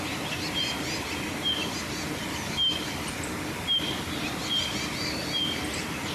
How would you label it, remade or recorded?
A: recorded